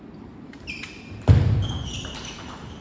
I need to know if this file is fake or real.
real